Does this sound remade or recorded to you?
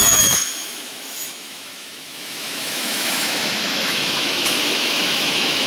remade